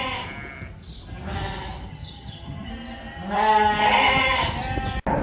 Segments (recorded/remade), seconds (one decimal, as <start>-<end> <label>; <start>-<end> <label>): 0.0-1.9 recorded; 1.9-2.7 remade; 2.7-5.2 recorded